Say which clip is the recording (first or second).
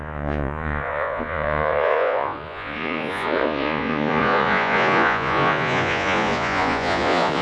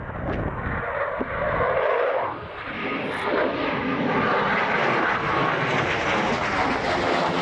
second